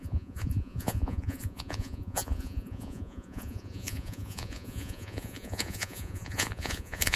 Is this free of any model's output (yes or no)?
no